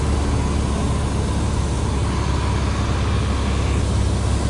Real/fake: real